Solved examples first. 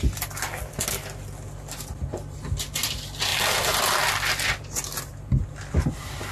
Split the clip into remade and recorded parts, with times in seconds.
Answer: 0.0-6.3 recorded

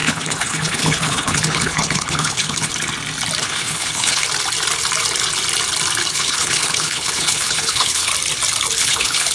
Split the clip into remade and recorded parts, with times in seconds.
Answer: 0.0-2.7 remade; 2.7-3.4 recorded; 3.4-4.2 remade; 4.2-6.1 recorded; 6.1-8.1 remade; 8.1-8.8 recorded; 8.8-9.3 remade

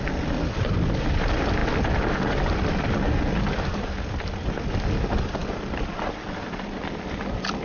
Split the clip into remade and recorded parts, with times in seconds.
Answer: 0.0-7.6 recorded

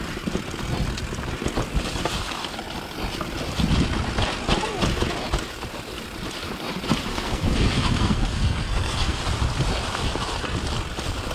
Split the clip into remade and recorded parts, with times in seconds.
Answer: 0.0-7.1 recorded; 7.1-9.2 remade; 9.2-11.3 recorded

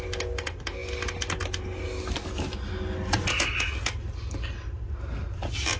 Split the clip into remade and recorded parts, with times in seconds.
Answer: 0.0-5.8 recorded

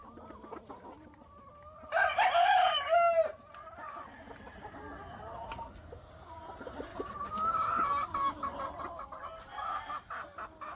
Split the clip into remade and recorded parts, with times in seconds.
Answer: 0.0-0.7 remade; 0.7-6.9 recorded; 6.9-9.0 remade; 9.0-10.8 recorded